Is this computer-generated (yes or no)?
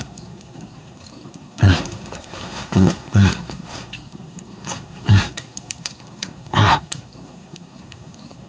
yes